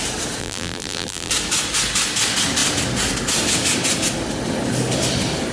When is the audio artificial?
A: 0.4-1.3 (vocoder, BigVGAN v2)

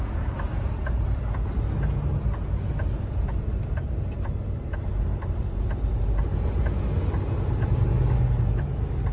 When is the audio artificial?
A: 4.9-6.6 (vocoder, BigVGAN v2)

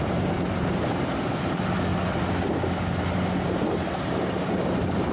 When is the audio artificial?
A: 0.0-1.9 (vocoder, BigVGAN v2)

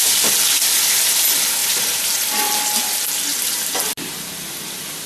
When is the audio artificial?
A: 1.6-2.7 (vocoder, BigVGAN v2); 3.3-3.9

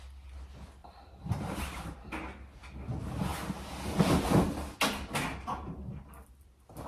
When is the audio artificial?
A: 0.8-2.1 (vocoder, BigVGAN v2)

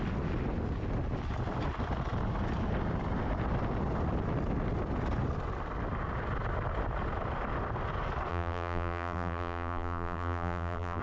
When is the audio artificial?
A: 8.3-11.0 (vocoder, BigVGAN v2)

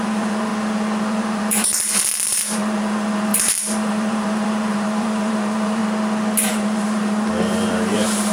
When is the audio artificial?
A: 0.0-0.5 (vocoder, BigVGAN v2); 1.1-5.8; 6.5-8.3